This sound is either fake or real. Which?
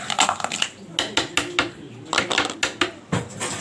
real